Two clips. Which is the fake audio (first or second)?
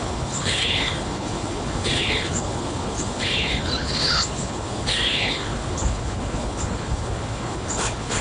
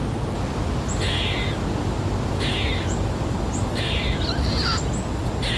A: first